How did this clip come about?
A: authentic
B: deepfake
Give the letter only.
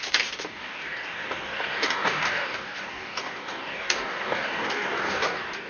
B